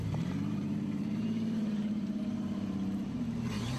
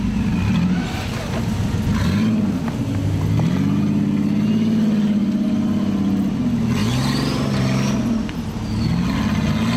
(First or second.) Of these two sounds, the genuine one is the second